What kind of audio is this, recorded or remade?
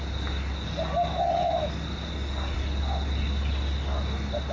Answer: recorded